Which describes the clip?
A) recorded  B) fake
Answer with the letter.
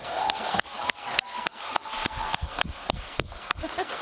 B